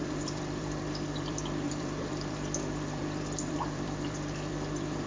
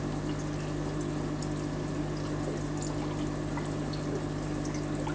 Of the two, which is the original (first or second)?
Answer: second